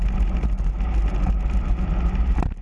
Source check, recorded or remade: recorded